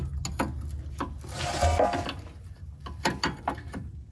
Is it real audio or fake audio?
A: real